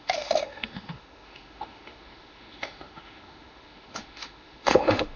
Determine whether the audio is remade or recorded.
remade